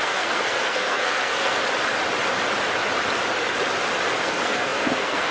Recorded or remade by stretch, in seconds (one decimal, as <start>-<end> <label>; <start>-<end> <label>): 0.0-1.6 remade; 1.6-4.2 recorded; 4.2-5.3 remade